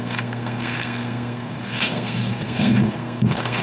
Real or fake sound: fake